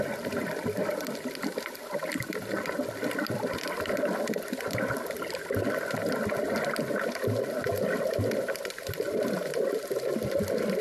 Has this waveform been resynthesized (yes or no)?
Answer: no